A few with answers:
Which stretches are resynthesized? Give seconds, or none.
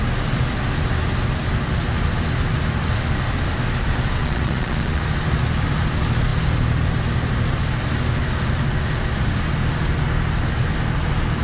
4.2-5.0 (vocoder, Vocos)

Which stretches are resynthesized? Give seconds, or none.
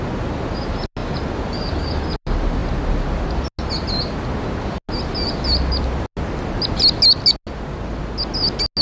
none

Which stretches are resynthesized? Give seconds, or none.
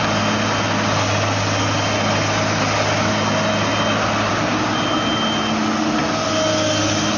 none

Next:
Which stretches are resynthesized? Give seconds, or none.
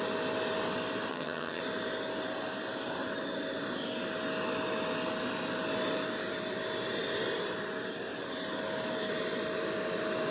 1.1-1.6 (vocoder, HiFi-GAN)